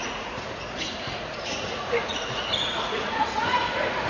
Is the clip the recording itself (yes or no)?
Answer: no